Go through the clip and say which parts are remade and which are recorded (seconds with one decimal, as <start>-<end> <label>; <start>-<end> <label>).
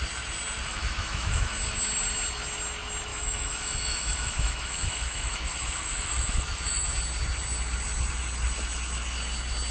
0.0-0.7 recorded; 0.7-1.5 remade; 1.5-3.1 recorded; 3.1-6.9 remade; 6.9-9.7 recorded